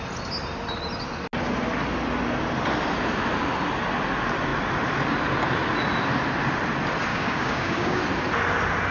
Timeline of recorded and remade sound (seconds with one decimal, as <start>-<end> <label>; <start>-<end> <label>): 0.0-7.1 recorded; 7.1-8.0 remade; 8.0-8.9 recorded